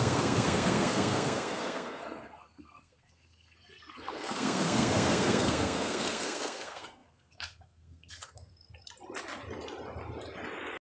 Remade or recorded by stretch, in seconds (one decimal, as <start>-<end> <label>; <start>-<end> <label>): 0.0-8.5 remade; 8.5-10.9 recorded